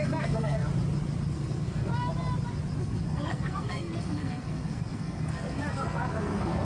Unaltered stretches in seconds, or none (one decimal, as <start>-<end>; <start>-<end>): 0.6-1.3; 1.9-2.8